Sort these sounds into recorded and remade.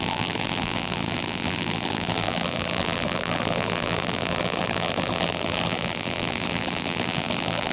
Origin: remade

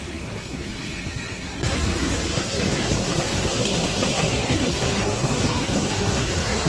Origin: remade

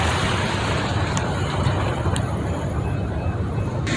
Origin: remade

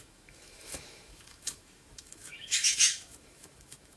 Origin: remade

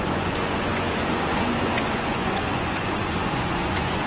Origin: remade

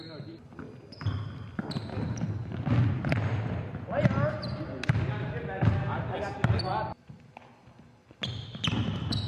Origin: recorded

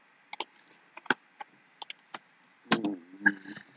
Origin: recorded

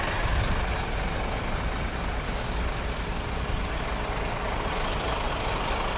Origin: recorded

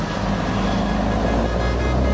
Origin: recorded